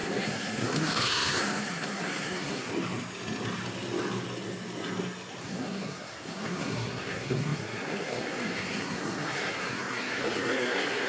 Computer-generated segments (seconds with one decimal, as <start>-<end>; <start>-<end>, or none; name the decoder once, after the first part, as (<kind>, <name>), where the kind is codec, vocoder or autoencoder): 0.0-2.7 (codec, SNAC); 5.4-11.1